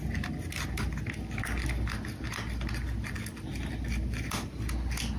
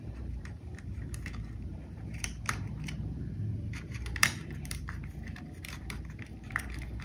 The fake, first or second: second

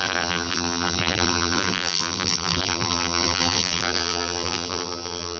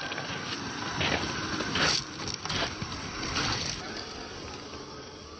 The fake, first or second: first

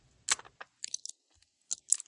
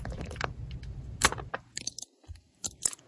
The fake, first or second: second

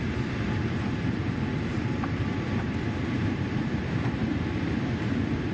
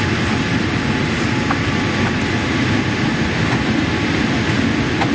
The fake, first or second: first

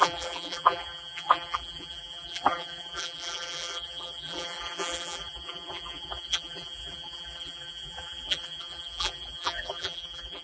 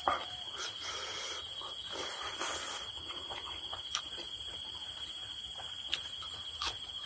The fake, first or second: first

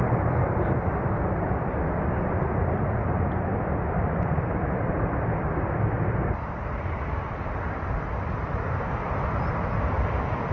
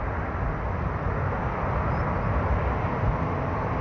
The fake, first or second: first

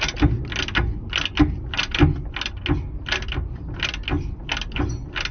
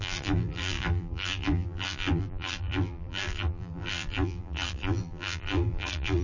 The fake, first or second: second